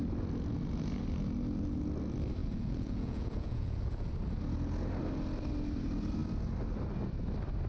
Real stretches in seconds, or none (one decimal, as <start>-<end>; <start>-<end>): 0.0-2.4; 4.1-7.7